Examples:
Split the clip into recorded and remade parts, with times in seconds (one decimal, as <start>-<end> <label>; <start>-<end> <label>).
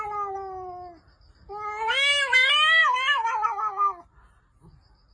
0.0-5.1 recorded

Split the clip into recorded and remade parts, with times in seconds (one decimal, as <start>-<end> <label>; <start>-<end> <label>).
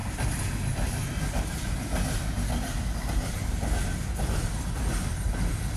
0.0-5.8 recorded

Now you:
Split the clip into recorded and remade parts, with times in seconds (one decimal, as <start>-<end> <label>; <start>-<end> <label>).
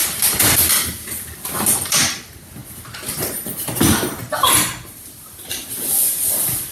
0.0-2.6 remade; 2.6-6.2 recorded; 6.2-6.7 remade